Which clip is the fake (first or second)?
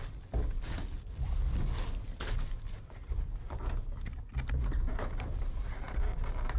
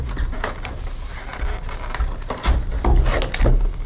first